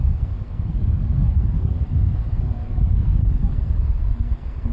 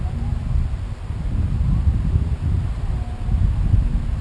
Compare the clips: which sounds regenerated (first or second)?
first